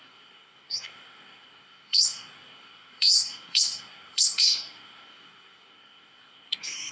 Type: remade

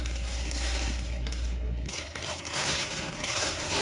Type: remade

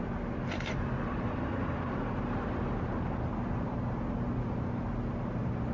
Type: recorded